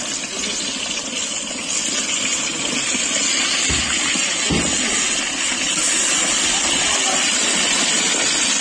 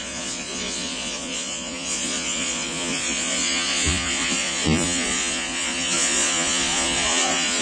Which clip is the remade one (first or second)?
second